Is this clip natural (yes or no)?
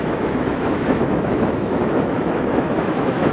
no